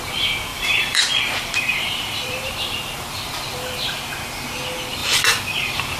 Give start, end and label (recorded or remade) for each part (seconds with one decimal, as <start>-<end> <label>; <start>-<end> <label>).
0.0-0.5 recorded; 0.5-4.1 remade; 4.1-5.0 recorded; 5.0-6.0 remade